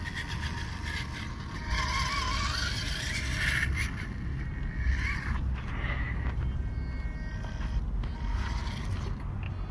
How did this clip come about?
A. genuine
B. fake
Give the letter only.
A